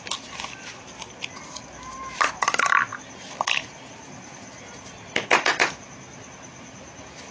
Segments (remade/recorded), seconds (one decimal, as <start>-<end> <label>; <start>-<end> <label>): 0.0-7.3 recorded

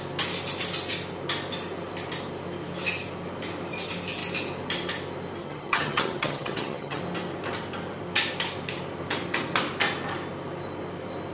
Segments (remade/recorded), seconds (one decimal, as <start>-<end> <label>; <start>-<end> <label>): 0.0-5.4 recorded; 5.4-7.0 remade; 7.0-11.3 recorded

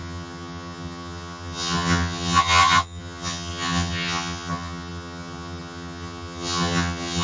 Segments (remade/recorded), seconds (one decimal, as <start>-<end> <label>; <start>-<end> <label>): 0.0-7.2 remade

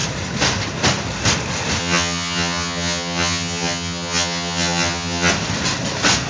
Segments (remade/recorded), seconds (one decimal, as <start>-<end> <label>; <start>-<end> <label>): 0.0-1.8 recorded; 1.8-5.3 remade; 5.3-6.3 recorded

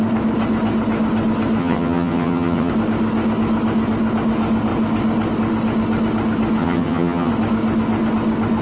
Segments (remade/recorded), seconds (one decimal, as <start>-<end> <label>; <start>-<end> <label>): 0.0-1.6 recorded; 1.6-2.7 remade; 2.7-6.6 recorded; 6.6-7.3 remade; 7.3-8.6 recorded

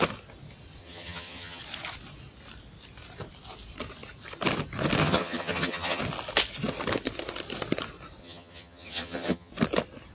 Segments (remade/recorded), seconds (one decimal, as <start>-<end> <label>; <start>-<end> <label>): 0.0-0.8 recorded; 0.8-1.6 remade; 1.6-5.0 recorded; 5.0-6.0 remade; 6.0-8.2 recorded; 8.2-9.5 remade; 9.5-10.1 recorded

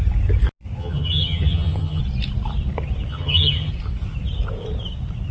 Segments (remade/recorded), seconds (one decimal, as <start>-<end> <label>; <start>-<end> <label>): 0.0-0.8 recorded; 0.8-2.0 remade; 2.0-3.1 recorded; 3.1-3.7 remade; 3.7-5.3 recorded